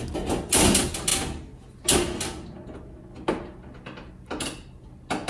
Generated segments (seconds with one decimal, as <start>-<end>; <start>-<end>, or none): none